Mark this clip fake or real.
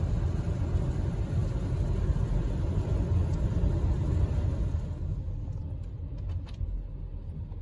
real